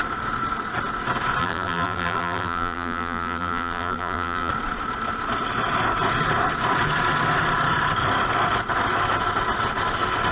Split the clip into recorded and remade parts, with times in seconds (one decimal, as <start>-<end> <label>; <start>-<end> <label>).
0.0-1.4 recorded; 1.4-4.5 remade; 4.5-10.3 recorded